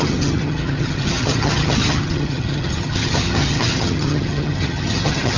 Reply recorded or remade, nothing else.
remade